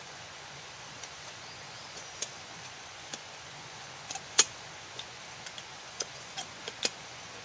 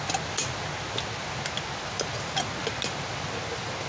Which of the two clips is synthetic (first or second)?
first